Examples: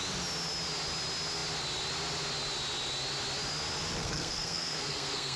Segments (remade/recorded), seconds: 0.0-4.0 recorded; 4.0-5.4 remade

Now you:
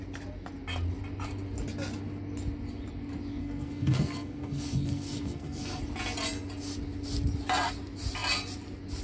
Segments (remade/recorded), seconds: 0.0-3.4 recorded; 3.4-5.8 remade; 5.8-9.0 recorded

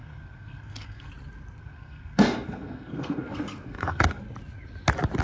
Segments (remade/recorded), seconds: 0.0-1.1 remade; 1.1-1.6 recorded; 1.6-4.2 remade; 4.2-5.2 recorded

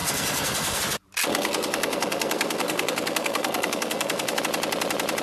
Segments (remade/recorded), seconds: 0.0-0.8 remade; 0.8-1.3 recorded; 1.3-4.4 remade; 4.4-5.2 recorded

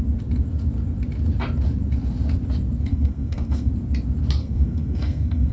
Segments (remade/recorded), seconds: 0.0-2.9 recorded; 2.9-3.7 remade; 3.7-4.4 recorded; 4.4-5.5 remade

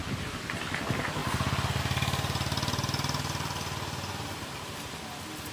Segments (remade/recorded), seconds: 0.0-5.5 recorded